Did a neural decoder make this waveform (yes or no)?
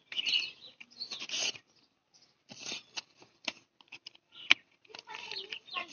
no